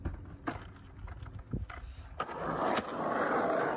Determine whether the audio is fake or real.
real